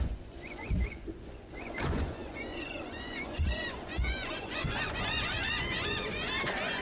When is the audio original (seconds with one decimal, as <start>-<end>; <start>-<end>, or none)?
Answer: none